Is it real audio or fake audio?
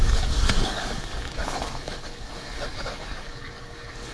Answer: fake